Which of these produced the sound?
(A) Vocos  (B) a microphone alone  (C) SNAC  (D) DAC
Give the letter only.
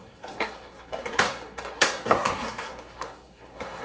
C